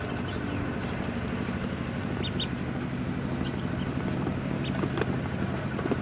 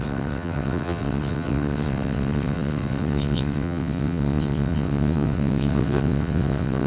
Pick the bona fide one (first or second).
first